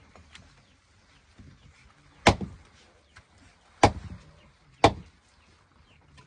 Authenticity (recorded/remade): recorded